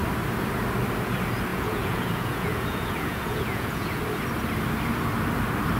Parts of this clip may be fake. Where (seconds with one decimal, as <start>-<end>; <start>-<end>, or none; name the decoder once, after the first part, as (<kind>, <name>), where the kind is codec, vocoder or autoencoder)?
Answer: 1.5-4.0 (vocoder, Vocos)